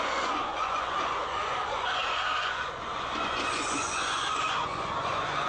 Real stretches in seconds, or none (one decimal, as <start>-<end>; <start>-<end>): none